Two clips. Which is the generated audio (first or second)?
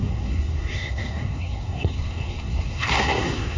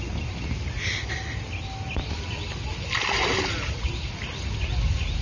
first